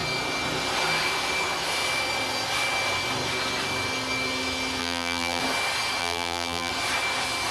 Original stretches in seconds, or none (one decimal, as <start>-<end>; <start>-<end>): 0.0-4.8; 5.4-6.0; 6.7-7.5